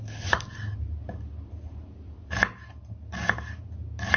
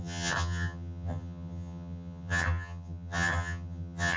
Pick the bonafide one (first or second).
first